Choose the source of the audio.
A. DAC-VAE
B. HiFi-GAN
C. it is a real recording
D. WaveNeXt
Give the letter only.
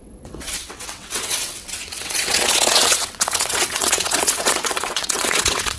D